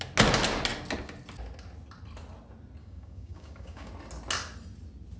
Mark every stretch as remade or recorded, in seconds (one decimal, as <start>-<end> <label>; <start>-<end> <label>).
0.0-2.8 recorded; 2.8-3.9 remade; 3.9-5.2 recorded